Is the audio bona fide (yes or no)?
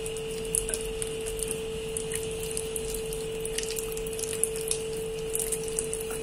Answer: yes